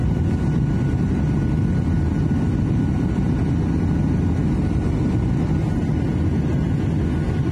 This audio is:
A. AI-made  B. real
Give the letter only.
B